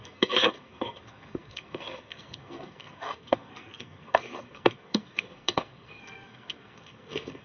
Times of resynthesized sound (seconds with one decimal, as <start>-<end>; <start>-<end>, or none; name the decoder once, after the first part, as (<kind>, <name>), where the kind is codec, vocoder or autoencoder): 0.0-7.4 (codec, SNAC)